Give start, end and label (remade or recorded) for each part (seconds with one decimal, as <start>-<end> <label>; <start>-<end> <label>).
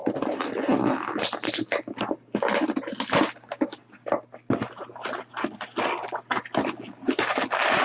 0.0-7.8 recorded